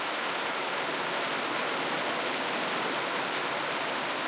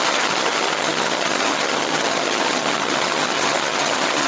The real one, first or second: first